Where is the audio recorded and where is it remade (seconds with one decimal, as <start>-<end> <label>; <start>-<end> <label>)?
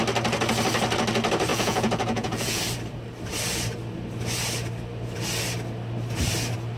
0.0-1.5 recorded; 1.5-2.6 remade; 2.6-6.8 recorded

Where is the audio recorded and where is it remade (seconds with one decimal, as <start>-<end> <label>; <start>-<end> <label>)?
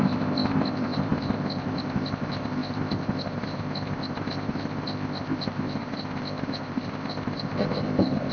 0.0-8.3 remade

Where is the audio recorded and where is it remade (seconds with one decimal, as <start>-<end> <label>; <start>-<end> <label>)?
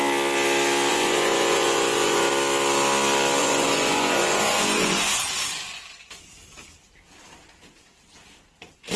0.0-0.9 recorded; 0.9-2.3 remade; 2.3-3.4 recorded; 3.4-5.8 remade; 5.8-9.0 recorded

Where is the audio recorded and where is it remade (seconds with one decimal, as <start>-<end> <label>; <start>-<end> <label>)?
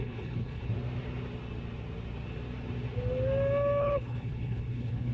0.0-0.7 remade; 0.7-3.8 recorded; 3.8-5.1 remade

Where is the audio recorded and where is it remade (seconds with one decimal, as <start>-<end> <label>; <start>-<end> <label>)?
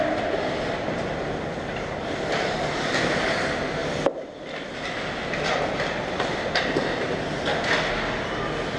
0.0-8.8 recorded